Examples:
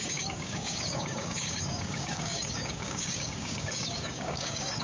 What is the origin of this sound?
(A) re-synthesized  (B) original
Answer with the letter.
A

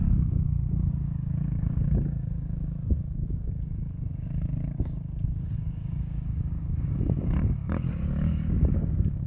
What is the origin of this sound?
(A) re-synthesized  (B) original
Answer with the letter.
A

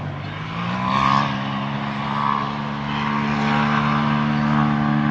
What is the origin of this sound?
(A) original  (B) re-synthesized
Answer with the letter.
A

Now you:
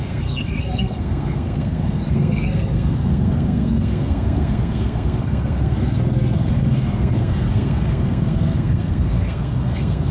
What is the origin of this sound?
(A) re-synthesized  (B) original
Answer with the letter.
A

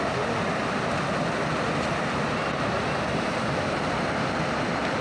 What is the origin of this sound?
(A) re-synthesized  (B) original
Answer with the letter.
B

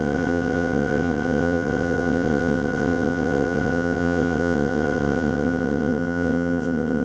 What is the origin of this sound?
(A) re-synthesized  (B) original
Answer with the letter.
A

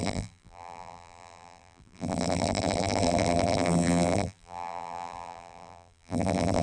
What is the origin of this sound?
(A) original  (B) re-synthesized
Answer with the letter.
B